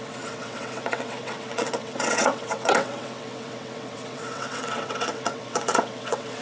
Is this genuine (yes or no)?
no